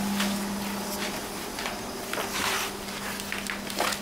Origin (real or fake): real